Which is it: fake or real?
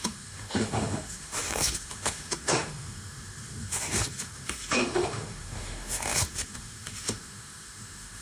fake